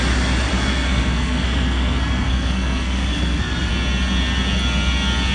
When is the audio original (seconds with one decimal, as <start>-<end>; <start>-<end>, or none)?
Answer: 0.0-0.5; 3.7-5.3